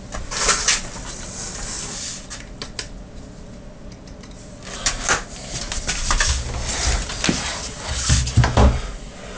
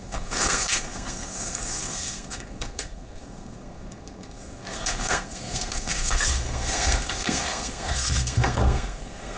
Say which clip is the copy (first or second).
second